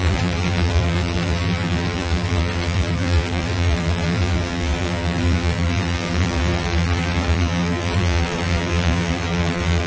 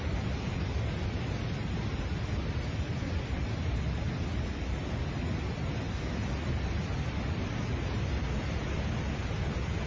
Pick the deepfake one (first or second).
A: first